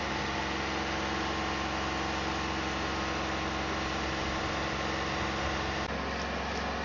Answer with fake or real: real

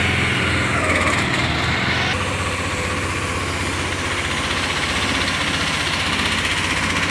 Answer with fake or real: real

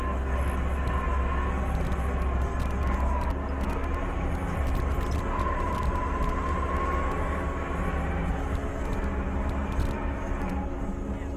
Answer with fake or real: real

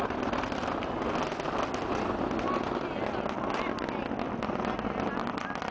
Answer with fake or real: real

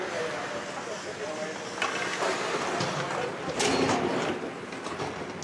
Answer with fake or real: real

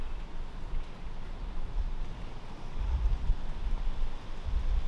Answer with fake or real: real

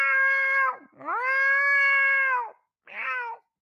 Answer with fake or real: real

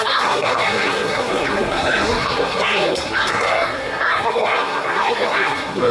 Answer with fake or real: fake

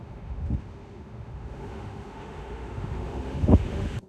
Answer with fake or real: fake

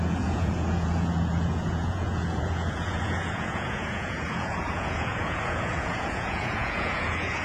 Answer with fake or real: fake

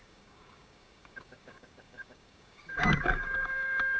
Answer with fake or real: fake